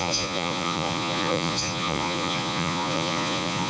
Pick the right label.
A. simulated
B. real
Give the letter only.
A